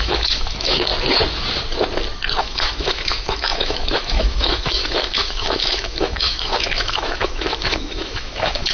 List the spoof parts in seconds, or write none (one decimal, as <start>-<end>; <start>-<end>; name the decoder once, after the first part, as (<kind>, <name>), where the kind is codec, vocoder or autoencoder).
0.0-0.9 (autoencoder, DAC-VAE); 2.4-8.7